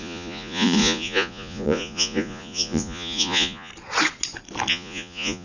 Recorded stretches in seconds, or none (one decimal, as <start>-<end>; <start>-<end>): 3.7-4.7

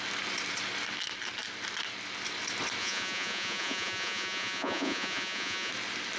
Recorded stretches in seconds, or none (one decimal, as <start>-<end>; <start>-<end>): 0.0-2.8; 5.7-6.2